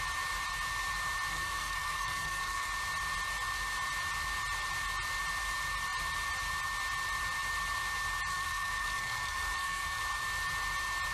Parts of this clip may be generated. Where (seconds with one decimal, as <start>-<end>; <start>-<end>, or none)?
1.3-2.7; 8.3-10.0